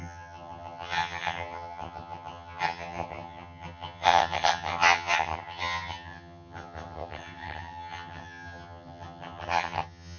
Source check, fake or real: fake